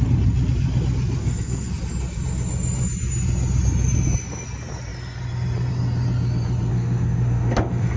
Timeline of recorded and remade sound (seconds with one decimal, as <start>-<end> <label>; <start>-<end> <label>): 0.0-1.2 recorded; 1.2-1.7 remade; 1.7-6.7 recorded; 6.7-8.0 remade